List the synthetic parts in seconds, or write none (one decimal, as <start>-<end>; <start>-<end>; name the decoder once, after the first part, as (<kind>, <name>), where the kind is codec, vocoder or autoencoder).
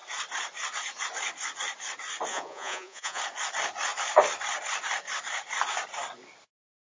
2.3-3.2 (vocoder, Vocos)